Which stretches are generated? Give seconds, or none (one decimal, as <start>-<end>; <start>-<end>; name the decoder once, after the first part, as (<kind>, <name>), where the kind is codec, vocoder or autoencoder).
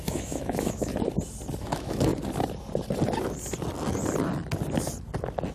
0.0-0.9 (autoencoder, DAC-VAE); 1.6-2.1